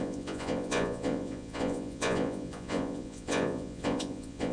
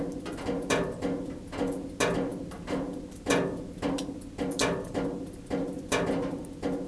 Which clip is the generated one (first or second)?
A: first